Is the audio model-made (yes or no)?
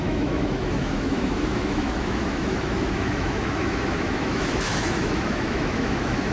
yes